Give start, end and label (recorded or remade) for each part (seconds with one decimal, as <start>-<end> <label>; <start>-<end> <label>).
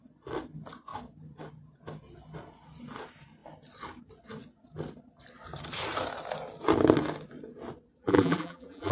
0.0-8.0 recorded; 8.0-8.9 remade